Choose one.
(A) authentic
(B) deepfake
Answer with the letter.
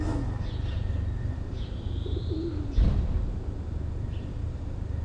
A